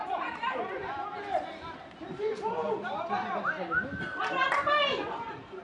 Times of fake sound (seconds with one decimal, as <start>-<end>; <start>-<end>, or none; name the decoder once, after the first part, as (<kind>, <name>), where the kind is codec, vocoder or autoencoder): 0.0-3.4 (vocoder, BigVGAN v2)

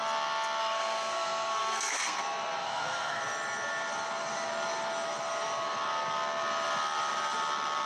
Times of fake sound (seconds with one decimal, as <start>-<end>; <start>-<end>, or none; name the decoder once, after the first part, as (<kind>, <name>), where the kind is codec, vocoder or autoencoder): 0.6-2.2 (codec, SNAC); 2.6-3.2

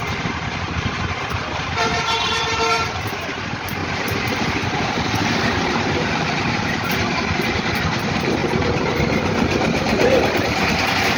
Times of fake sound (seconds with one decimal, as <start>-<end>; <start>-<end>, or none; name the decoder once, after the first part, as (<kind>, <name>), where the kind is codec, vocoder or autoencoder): 0.0-11.2 (vocoder, BigVGAN v2)